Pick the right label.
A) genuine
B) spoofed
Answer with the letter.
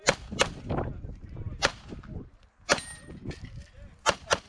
B